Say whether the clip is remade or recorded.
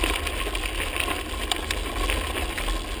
recorded